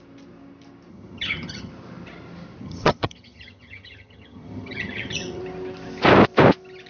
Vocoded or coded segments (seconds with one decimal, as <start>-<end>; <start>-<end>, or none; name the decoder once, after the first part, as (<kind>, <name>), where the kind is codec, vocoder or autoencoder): 0.9-1.7 (vocoder, HiFi-GAN); 2.6-5.4